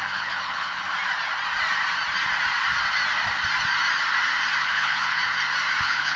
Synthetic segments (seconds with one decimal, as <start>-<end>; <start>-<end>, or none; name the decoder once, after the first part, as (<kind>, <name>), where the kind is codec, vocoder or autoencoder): 0.0-0.9 (codec, HILCodec); 4.6-5.2; 5.8-6.2